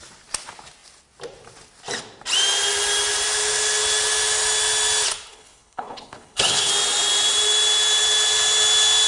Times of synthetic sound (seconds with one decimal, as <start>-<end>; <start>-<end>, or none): 5.3-6.7